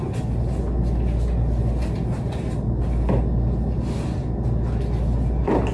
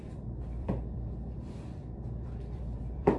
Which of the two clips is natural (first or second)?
first